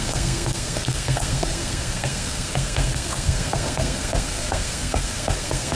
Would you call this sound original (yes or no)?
no